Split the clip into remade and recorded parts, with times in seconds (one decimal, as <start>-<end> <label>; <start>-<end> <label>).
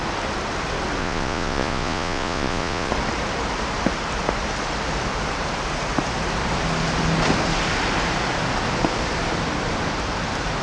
0.0-1.0 recorded; 1.0-2.9 remade; 2.9-10.6 recorded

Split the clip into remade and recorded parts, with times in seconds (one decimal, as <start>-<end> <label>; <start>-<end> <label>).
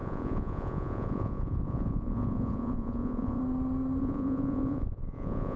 0.0-3.4 remade; 3.4-4.0 recorded; 4.0-5.6 remade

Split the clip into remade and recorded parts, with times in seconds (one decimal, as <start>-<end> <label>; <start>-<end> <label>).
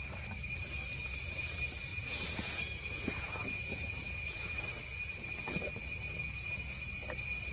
0.0-1.9 recorded; 1.9-4.6 remade; 4.6-7.5 recorded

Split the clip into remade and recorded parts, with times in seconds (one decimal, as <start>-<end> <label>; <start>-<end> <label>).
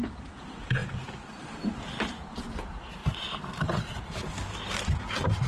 0.0-0.8 remade; 0.8-2.4 recorded; 2.4-3.0 remade; 3.0-5.5 recorded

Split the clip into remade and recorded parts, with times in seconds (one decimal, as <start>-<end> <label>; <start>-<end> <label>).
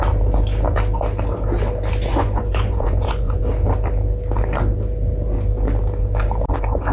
0.0-2.1 recorded; 2.1-3.4 remade; 3.4-6.9 recorded